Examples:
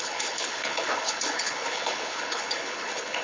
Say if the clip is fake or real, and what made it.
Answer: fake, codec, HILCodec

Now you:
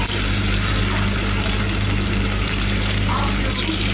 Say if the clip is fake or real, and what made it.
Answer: real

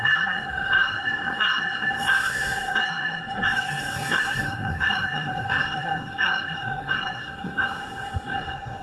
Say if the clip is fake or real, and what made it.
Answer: fake, codec, SNAC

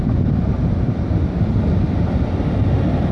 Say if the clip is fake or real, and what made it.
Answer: real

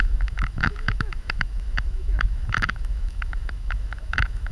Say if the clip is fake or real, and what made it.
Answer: fake, autoencoder, DAC-VAE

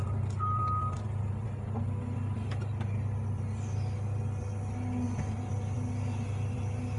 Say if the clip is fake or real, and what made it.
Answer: real